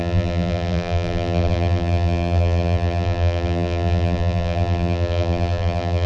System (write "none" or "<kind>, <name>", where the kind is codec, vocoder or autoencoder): vocoder, BigVGAN v2